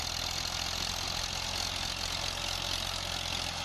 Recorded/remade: recorded